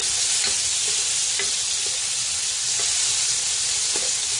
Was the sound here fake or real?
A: real